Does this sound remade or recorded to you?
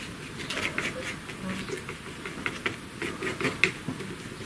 recorded